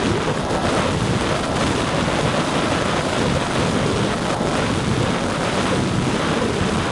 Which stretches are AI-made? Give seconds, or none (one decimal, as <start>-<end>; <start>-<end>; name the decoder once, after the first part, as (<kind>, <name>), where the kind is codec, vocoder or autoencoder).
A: none